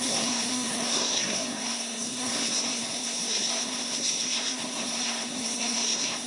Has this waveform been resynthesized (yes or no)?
yes